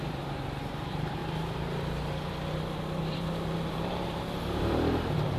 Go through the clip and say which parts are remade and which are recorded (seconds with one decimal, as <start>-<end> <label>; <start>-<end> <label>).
0.0-1.2 remade; 1.2-3.0 recorded; 3.0-5.4 remade